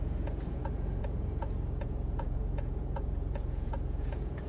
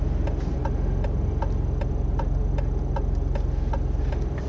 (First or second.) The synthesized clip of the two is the first